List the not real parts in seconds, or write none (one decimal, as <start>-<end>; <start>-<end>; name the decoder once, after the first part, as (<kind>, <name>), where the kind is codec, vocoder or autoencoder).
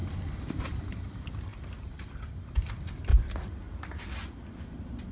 0.0-1.5 (vocoder, BigVGAN v2); 2.6-3.1